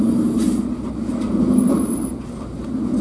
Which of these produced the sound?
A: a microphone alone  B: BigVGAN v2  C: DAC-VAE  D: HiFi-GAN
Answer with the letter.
B